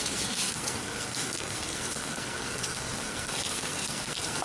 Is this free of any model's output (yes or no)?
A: no